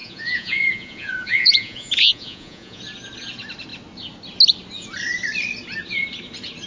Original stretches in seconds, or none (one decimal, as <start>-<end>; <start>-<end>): 2.8-6.7